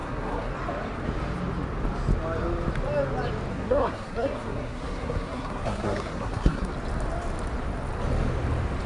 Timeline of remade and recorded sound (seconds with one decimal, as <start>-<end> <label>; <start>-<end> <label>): 0.0-0.5 remade; 0.5-3.5 recorded; 3.5-6.7 remade; 6.7-8.9 recorded